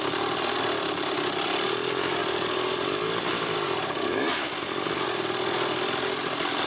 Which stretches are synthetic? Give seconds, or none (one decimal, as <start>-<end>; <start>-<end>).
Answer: none